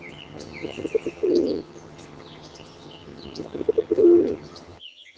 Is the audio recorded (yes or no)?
no